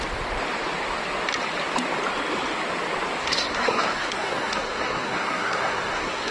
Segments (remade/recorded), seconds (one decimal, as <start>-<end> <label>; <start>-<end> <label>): 0.0-3.2 recorded; 3.2-6.3 remade